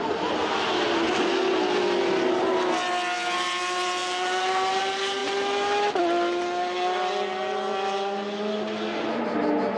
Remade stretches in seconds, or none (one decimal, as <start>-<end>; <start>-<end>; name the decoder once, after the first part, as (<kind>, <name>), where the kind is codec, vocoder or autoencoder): none